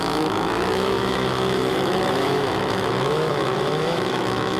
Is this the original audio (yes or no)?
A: no